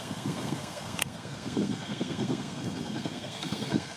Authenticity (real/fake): fake